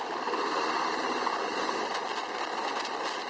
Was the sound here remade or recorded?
recorded